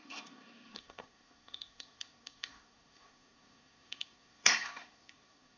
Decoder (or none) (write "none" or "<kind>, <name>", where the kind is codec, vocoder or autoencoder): codec, SNAC